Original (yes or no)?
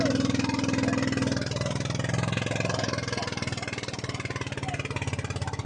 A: yes